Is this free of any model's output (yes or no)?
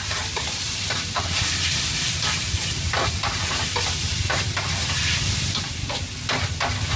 yes